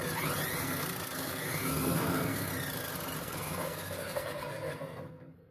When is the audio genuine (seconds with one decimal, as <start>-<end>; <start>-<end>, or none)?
0.0-0.6; 2.5-3.2